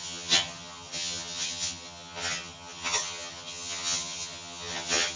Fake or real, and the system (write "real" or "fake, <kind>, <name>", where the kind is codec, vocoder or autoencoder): fake, vocoder, HiFi-GAN